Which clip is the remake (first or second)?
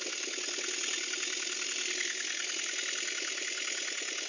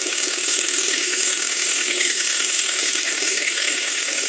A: second